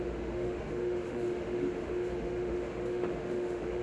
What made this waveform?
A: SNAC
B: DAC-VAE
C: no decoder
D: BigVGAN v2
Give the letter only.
B